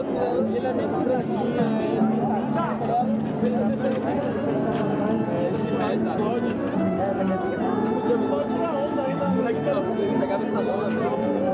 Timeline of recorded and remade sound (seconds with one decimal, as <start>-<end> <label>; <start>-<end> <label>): 0.0-8.7 recorded; 8.7-9.5 remade; 9.5-11.5 recorded